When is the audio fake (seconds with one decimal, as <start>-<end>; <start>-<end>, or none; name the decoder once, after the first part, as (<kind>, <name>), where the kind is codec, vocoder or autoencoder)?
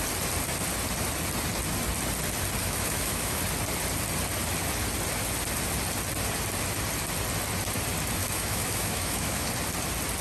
2.6-3.4 (autoencoder, DAC-VAE); 8.2-9.5